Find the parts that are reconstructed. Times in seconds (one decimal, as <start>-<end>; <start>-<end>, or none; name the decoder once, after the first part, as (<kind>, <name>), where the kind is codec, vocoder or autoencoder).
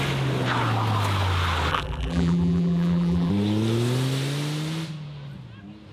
1.7-3.3 (vocoder, BigVGAN v2)